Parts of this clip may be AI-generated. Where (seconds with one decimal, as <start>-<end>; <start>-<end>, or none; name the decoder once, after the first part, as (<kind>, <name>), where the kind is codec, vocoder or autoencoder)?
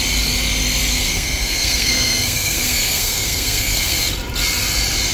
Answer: 0.9-4.0 (codec, SNAC)